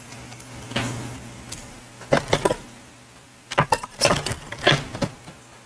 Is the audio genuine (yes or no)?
yes